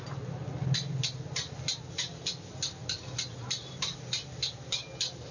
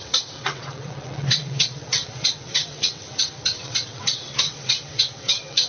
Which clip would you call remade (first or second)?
second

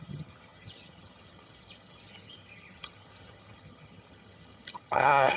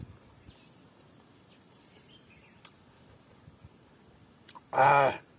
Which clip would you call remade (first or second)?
first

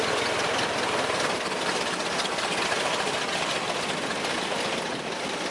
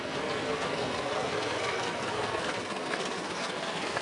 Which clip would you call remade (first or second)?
second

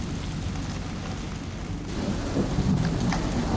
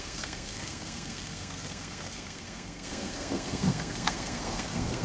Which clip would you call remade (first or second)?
second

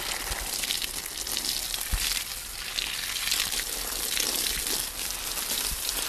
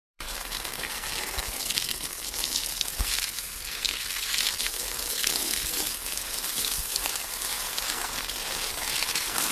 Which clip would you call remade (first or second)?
second